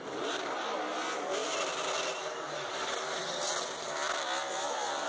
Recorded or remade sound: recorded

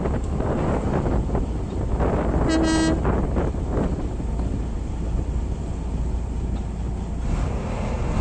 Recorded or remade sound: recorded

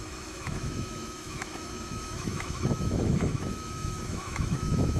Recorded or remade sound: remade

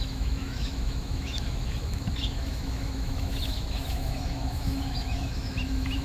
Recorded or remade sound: remade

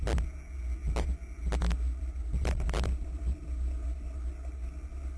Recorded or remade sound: recorded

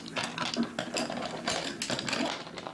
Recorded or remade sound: recorded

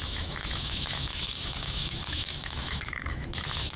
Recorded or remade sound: remade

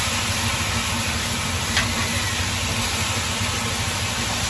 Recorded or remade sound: recorded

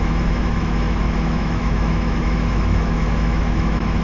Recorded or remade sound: remade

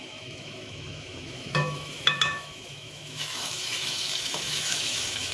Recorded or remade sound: remade